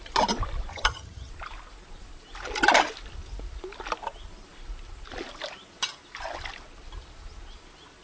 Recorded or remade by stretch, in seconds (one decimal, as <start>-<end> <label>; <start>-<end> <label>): 0.0-0.7 recorded; 0.7-1.3 remade; 1.3-8.0 recorded